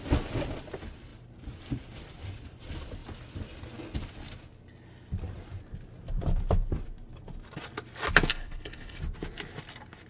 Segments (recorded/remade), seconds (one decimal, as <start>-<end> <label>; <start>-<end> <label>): 0.0-8.3 recorded; 8.3-9.0 remade; 9.0-10.1 recorded